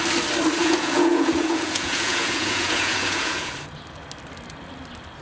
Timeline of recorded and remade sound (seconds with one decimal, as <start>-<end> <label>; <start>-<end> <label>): 0.0-0.6 recorded; 0.6-3.5 remade; 3.5-5.2 recorded